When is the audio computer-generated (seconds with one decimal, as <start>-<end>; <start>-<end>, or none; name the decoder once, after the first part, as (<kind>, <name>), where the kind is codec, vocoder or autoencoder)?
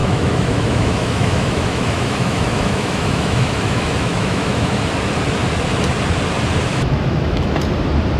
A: 0.0-4.8 (autoencoder, DAC-VAE); 6.7-7.6